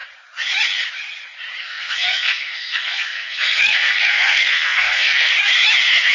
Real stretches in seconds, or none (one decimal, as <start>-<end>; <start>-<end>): 0.0-1.6; 5.3-6.1